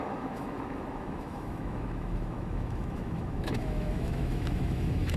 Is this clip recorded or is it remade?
remade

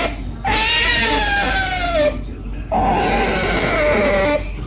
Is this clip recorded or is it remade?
recorded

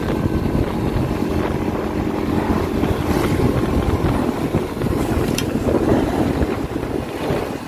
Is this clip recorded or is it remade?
recorded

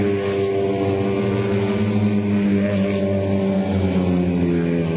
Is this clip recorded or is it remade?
recorded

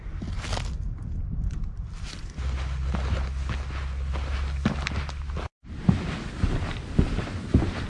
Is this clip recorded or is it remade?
recorded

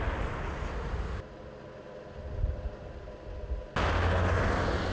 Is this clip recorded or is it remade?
recorded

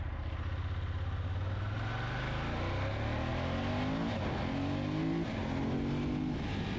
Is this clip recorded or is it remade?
recorded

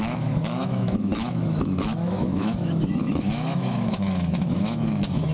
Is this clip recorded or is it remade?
remade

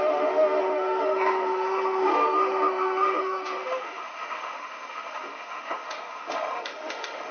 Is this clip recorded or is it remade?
remade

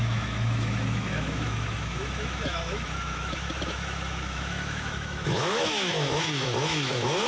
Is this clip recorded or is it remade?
remade